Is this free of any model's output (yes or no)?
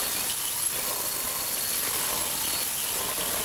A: yes